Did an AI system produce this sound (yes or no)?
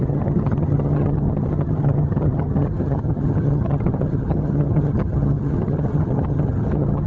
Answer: yes